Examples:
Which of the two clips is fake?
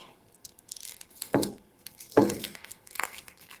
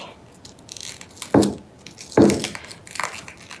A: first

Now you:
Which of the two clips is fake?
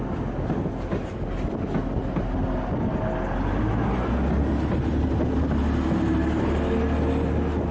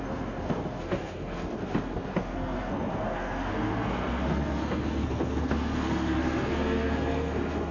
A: second